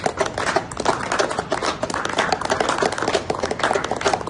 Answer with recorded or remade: recorded